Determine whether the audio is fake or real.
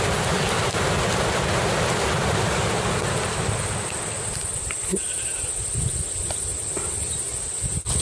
real